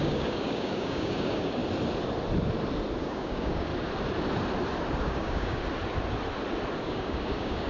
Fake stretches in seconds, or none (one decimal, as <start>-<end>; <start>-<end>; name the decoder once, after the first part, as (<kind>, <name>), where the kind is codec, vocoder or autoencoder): 0.0-1.6 (codec, DAC); 3.0-3.7; 5.0-5.6; 6.8-7.7